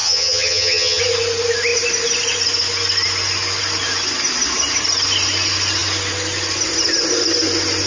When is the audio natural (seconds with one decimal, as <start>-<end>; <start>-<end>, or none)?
1.0-7.9